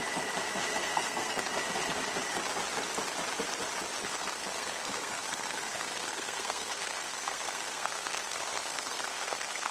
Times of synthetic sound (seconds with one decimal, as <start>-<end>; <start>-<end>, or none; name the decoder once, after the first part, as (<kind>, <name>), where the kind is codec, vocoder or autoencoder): 0.8-1.5 (codec, SNAC); 4.0-9.7